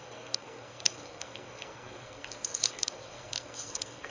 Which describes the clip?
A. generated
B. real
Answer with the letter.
A